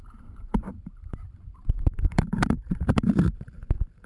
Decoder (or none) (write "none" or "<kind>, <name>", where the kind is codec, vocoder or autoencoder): vocoder, BigVGAN v2